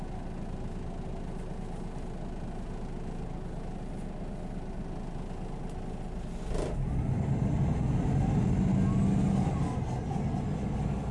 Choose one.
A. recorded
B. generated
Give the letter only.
A